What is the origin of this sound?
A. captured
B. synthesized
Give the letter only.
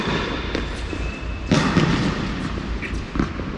A